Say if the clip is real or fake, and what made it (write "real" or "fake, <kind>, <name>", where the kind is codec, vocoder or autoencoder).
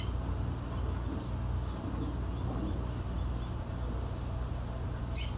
real